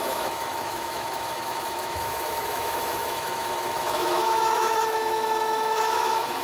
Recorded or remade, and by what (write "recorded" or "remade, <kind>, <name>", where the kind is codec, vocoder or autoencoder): remade, autoencoder, DAC-VAE